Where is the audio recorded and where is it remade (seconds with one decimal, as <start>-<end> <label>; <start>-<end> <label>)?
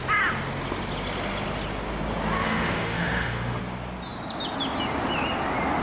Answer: 0.0-2.4 recorded; 2.4-3.6 remade; 3.6-5.8 recorded